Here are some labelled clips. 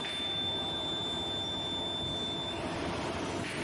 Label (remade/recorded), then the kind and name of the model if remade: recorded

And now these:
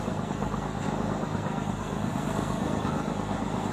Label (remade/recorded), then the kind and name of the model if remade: remade, codec, SNAC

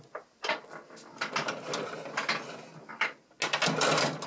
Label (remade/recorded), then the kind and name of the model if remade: recorded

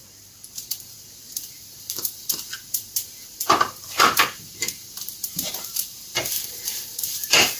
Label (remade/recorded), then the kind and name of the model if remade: remade, vocoder, BigVGAN v2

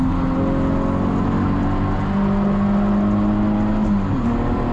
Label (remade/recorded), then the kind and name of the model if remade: recorded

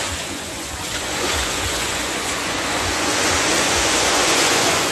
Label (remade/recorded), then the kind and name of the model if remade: remade, vocoder, Vocos